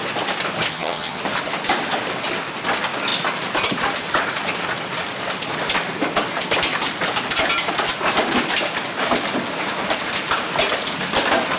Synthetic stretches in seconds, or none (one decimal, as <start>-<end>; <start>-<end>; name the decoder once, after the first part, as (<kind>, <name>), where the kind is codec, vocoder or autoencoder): 0.7-1.2 (vocoder, HiFi-GAN)